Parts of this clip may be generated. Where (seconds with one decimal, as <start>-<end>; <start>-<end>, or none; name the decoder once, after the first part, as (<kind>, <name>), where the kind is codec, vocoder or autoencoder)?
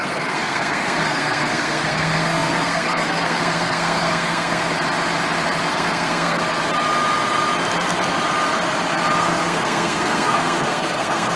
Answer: 0.0-4.6 (codec, SNAC); 5.7-6.4; 9.2-11.4